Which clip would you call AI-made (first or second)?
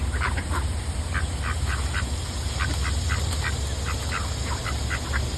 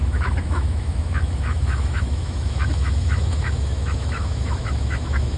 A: second